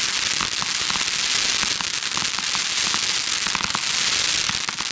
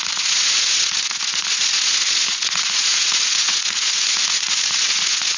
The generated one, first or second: second